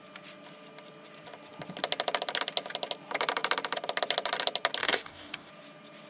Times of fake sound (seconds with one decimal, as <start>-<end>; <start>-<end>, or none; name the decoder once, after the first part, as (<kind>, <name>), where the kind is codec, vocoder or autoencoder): 4.8-5.5 (codec, DAC)